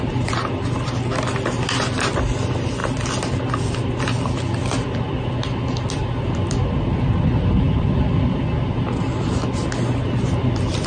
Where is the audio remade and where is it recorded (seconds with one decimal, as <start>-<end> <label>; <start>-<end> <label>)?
0.0-10.9 recorded